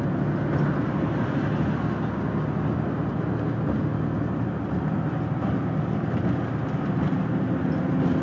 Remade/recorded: recorded